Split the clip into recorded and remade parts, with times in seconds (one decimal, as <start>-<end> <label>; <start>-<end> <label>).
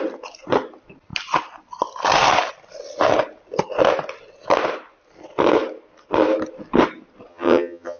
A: 0.0-7.3 recorded; 7.3-8.0 remade